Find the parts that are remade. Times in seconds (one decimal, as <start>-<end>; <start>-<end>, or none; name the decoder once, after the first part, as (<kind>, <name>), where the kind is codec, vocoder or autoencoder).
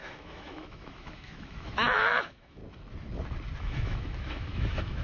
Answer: 0.0-2.6 (autoencoder, DAC-VAE); 3.6-5.0